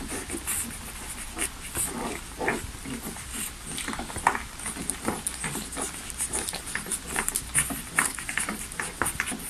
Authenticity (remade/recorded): recorded